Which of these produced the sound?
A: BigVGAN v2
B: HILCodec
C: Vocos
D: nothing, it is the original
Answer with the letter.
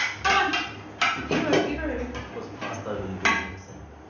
D